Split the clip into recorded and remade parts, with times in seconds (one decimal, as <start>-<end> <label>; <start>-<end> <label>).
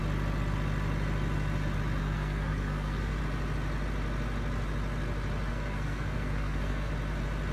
0.0-2.0 recorded; 2.0-3.2 remade; 3.2-5.5 recorded; 5.5-6.9 remade; 6.9-7.5 recorded